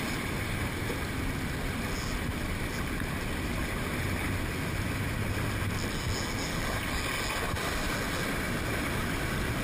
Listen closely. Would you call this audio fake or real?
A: real